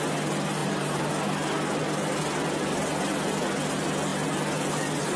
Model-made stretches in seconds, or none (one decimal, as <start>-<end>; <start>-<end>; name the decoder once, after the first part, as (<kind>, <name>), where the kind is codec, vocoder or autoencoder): 0.6-1.1 (vocoder, BigVGAN v2)